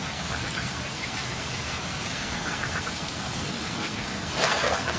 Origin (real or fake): fake